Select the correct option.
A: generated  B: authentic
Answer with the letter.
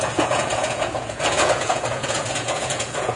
A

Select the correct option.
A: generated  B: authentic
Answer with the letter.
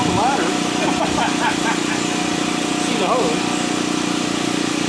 B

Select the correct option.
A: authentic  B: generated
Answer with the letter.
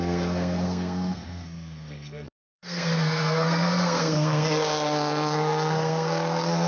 B